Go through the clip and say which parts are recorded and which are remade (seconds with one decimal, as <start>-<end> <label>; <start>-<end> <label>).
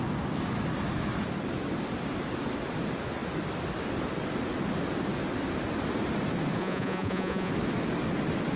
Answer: 0.0-6.6 recorded; 6.6-7.5 remade; 7.5-8.6 recorded